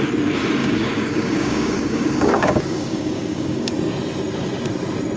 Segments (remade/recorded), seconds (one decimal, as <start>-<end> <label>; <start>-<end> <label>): 0.0-0.6 recorded; 0.6-3.7 remade; 3.7-5.2 recorded